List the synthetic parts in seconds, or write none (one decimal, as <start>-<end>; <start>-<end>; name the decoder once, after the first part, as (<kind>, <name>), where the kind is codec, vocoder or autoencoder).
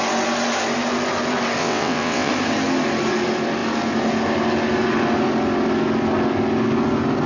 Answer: 1.6-2.3 (vocoder, WaveNeXt)